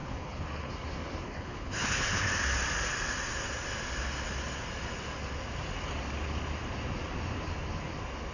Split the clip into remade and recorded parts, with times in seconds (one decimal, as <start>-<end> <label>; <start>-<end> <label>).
0.0-0.7 remade; 0.7-1.2 recorded; 1.2-2.3 remade; 2.3-8.3 recorded